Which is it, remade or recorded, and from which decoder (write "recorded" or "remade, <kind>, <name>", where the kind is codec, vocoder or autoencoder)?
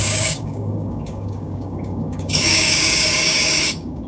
remade, codec, DAC